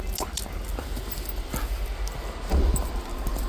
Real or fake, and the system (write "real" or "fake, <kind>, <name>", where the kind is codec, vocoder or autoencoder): real